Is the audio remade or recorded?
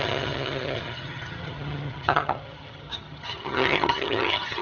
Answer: remade